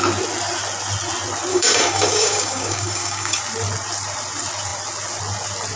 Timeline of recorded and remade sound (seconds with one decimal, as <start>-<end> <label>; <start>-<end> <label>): 0.0-1.5 recorded; 1.5-3.4 remade; 3.4-5.8 recorded